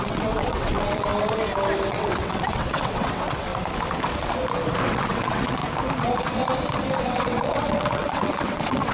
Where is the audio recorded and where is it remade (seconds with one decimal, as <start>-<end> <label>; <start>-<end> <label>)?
0.0-1.1 remade; 1.1-1.9 recorded; 1.9-3.5 remade; 3.5-4.8 recorded; 4.8-5.6 remade; 5.6-7.0 recorded; 7.0-8.9 remade